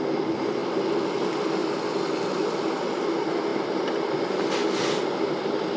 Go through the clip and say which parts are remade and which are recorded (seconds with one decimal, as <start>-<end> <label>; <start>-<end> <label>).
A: 0.0-5.8 recorded